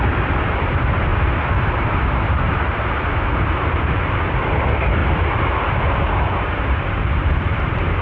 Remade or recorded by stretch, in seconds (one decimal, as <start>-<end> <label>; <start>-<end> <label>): 0.0-1.1 remade; 1.1-1.7 recorded; 1.7-5.0 remade; 5.0-6.2 recorded; 6.2-8.0 remade